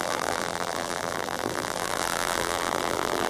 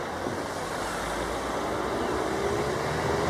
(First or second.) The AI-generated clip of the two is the first